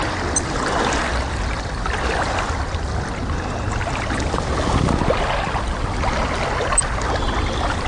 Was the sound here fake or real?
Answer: real